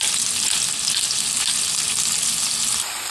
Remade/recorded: recorded